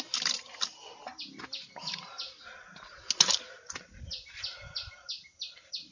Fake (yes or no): no